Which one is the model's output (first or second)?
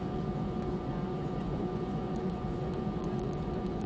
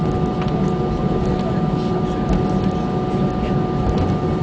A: first